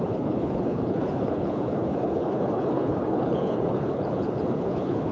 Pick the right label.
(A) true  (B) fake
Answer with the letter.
B